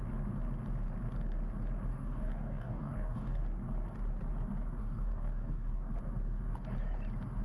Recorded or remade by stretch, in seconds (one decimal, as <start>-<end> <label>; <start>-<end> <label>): 0.0-1.9 recorded; 1.9-3.4 remade; 3.4-4.8 recorded; 4.8-5.9 remade; 5.9-7.4 recorded